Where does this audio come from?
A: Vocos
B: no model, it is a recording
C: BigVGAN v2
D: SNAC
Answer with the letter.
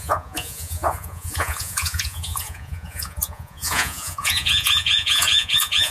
A